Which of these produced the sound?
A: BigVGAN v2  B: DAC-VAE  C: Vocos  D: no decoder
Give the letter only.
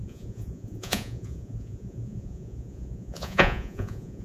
C